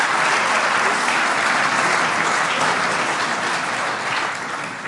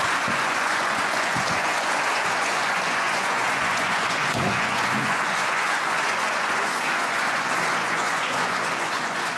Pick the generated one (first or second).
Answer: second